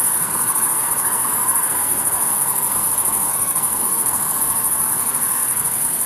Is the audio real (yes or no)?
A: no